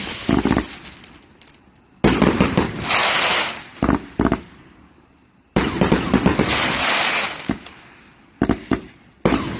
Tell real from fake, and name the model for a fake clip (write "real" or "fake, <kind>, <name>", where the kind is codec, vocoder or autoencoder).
real